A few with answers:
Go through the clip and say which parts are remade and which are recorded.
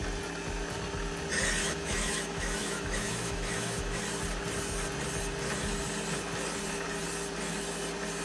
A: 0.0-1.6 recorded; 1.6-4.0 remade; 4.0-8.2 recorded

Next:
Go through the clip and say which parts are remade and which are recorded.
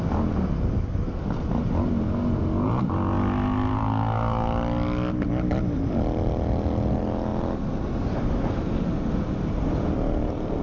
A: 0.0-10.6 recorded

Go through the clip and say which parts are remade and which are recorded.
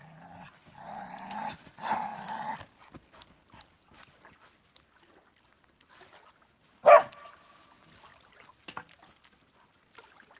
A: 0.0-10.4 recorded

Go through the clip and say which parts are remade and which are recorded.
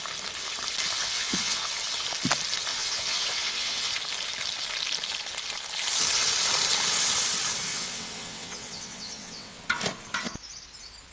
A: 0.0-1.0 recorded; 1.0-1.7 remade; 1.7-2.7 recorded; 2.7-3.9 remade; 3.9-7.7 recorded; 7.7-9.6 remade; 9.6-11.1 recorded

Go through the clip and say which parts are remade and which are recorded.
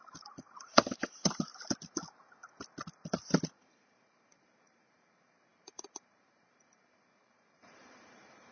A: 0.0-1.5 remade; 1.5-2.9 recorded; 2.9-8.5 remade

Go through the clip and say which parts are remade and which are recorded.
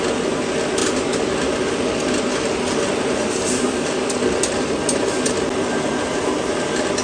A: 0.0-7.0 recorded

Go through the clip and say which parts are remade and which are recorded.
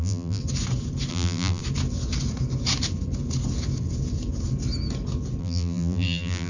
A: 0.0-0.4 remade; 0.4-1.1 recorded; 1.1-1.6 remade; 1.6-5.4 recorded; 5.4-6.5 remade